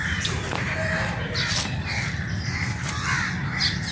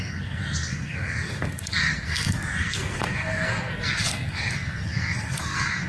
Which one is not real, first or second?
second